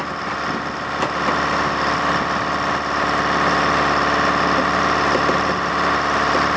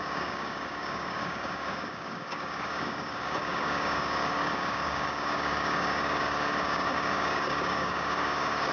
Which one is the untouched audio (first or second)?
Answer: first